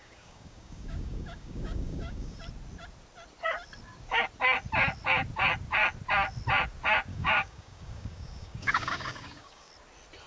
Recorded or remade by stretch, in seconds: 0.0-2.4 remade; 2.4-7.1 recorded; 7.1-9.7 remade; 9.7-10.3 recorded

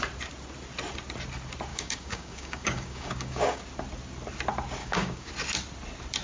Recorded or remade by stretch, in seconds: 0.0-1.7 recorded; 1.7-3.6 remade; 3.6-4.8 recorded; 4.8-5.3 remade; 5.3-6.2 recorded

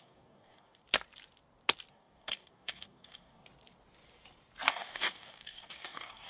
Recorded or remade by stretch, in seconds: 0.0-0.8 remade; 0.8-1.9 recorded; 1.9-3.4 remade; 3.4-4.7 recorded; 4.7-6.3 remade